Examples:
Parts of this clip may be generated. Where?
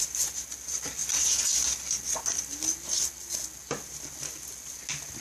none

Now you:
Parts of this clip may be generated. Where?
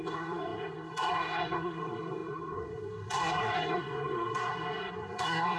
0.0-5.6 (codec, SNAC)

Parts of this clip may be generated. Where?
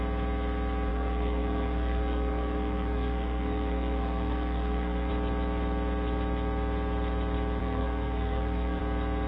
0.9-5.1 (codec, SNAC); 7.6-8.8